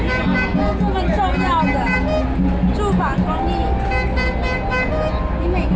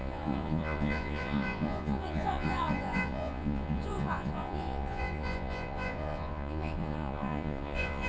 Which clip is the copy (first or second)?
second